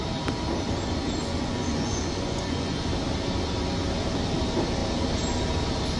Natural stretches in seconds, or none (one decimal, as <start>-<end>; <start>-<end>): 0.0-1.2; 2.9-6.0